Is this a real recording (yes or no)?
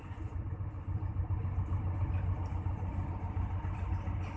yes